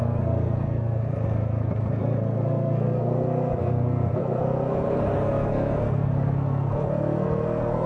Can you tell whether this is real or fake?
fake